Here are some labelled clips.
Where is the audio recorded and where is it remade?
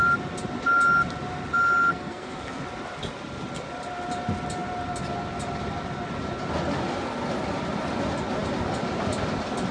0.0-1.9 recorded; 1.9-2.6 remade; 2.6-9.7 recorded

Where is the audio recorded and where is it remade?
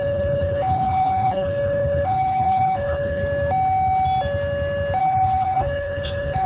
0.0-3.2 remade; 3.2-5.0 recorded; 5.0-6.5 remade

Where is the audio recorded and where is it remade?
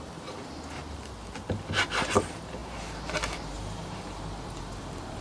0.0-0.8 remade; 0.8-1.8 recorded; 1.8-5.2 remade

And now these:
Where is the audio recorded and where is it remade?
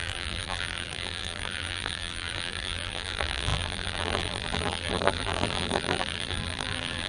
0.0-7.1 remade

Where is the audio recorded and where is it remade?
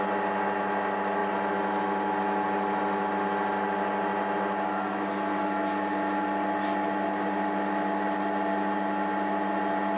0.0-10.0 recorded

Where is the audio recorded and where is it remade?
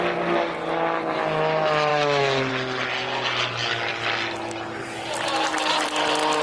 0.0-1.9 recorded; 1.9-2.5 remade; 2.5-6.4 recorded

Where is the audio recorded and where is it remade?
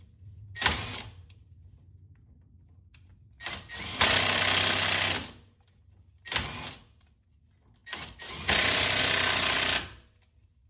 0.0-10.7 recorded